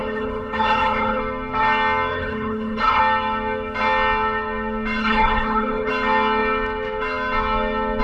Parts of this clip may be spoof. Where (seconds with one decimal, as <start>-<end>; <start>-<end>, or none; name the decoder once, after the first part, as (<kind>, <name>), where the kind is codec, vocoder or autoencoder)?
0.0-1.2 (codec, HILCodec); 2.1-3.0; 5.0-5.9